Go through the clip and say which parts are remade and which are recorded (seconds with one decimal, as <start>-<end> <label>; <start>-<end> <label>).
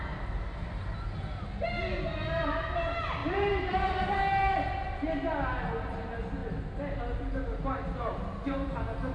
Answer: 0.0-3.2 recorded; 3.2-4.2 remade; 4.2-9.1 recorded